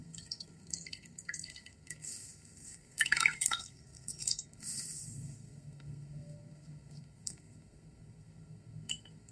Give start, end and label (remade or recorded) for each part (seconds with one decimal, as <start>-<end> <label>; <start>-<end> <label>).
0.0-9.3 remade